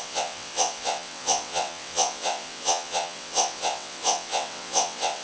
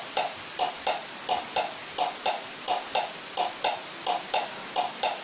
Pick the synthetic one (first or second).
first